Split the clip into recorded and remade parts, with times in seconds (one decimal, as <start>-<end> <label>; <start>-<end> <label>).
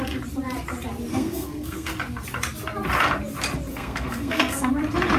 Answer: 0.0-1.1 recorded; 1.1-1.9 remade; 1.9-3.7 recorded; 3.7-4.7 remade; 4.7-5.2 recorded